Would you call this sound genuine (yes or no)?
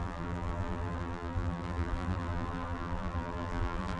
no